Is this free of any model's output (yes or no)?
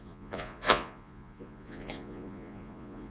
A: no